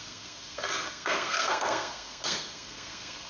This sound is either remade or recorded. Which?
remade